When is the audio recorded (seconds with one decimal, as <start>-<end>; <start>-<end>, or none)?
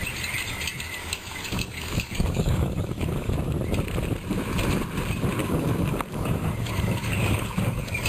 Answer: 0.0-1.0; 3.3-5.4